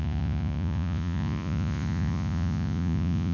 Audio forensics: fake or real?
fake